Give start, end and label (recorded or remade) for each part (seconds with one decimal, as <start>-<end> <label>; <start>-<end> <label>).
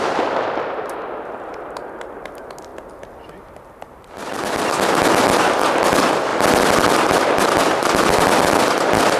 0.0-9.2 recorded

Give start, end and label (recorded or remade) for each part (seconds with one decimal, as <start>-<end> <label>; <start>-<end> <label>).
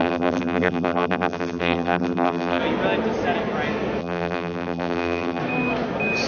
0.0-2.6 remade; 2.6-4.0 recorded; 4.0-5.4 remade; 5.4-6.3 recorded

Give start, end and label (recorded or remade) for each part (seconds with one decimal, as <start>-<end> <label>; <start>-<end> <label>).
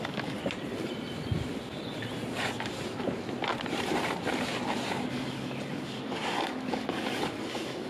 0.0-0.4 remade; 0.4-5.1 recorded; 5.1-7.9 remade